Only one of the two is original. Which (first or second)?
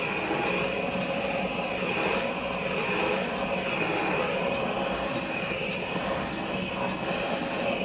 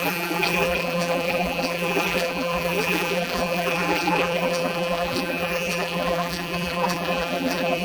first